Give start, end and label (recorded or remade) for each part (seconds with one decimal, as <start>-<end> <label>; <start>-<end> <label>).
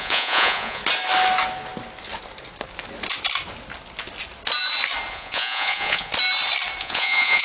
0.0-0.8 remade; 0.8-5.1 recorded; 5.1-6.1 remade; 6.1-6.8 recorded; 6.8-7.4 remade